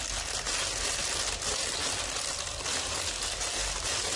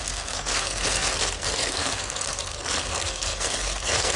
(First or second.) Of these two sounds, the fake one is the second